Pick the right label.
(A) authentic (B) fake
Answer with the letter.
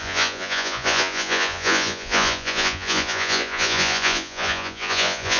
B